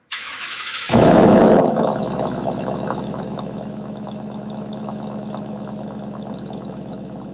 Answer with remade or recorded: remade